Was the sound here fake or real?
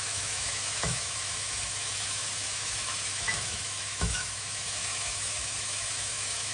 fake